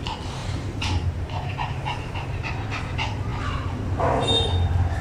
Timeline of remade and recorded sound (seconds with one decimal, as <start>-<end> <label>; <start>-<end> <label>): 0.0-0.4 recorded; 0.4-1.4 remade; 1.4-5.0 recorded